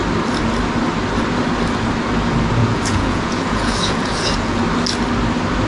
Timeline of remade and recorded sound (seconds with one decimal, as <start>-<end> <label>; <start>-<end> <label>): 0.0-2.6 recorded; 2.6-4.6 remade; 4.6-5.7 recorded